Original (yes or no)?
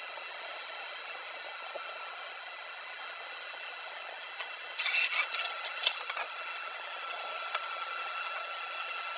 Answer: yes